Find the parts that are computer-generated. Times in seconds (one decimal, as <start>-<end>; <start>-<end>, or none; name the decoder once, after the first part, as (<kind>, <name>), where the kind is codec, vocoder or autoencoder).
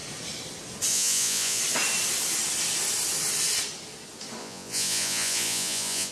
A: 0.9-1.6 (vocoder, Vocos); 4.4-6.1